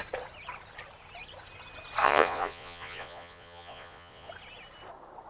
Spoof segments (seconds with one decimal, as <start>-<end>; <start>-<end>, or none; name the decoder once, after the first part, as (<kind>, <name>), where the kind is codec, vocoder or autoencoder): 2.0-4.3 (vocoder, Vocos)